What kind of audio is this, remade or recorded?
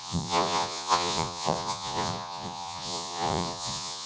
remade